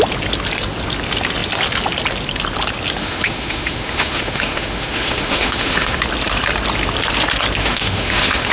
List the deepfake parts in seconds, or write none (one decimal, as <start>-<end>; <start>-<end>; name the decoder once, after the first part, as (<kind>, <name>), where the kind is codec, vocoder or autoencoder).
3.0-6.0 (autoencoder, DAC-VAE); 7.6-8.5